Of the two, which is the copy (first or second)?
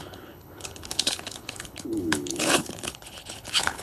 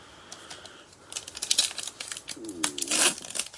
first